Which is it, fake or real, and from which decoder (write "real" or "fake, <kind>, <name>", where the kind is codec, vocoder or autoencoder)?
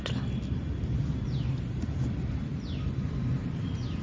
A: real